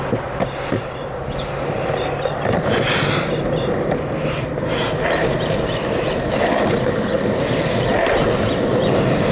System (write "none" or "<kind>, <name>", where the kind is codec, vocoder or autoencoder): none